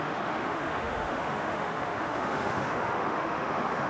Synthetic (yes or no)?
yes